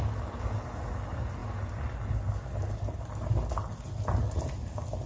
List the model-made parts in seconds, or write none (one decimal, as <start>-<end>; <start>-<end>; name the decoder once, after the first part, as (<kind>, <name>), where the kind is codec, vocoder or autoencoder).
none